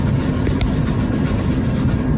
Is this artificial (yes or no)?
yes